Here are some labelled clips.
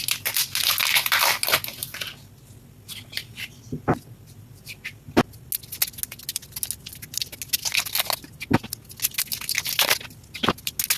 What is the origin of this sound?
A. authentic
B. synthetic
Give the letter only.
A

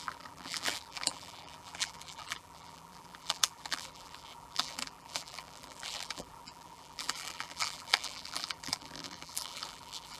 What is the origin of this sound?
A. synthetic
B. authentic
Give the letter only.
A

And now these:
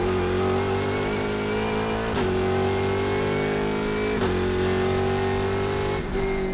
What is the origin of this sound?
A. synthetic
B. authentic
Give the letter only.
B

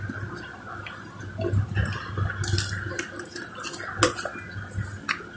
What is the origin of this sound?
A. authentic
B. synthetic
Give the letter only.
A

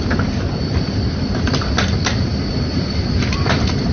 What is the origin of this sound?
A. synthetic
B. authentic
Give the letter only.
A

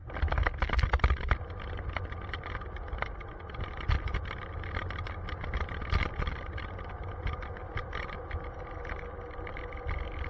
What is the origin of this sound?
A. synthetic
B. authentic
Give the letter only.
B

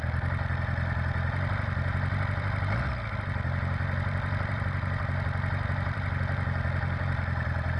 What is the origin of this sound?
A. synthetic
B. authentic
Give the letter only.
A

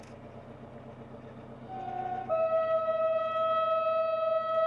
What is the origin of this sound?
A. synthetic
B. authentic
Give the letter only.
B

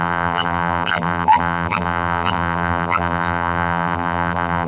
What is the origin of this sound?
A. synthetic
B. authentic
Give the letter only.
A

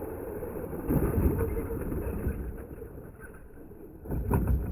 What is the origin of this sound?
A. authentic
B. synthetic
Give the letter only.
B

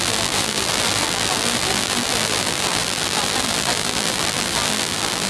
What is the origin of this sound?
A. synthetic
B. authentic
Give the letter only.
A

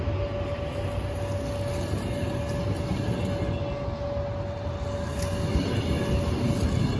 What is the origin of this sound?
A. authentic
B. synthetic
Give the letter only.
A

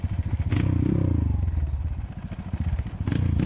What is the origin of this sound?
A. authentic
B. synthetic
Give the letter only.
A